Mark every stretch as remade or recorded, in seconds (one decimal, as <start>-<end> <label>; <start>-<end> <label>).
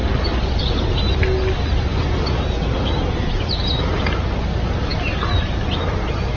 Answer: 0.0-6.4 recorded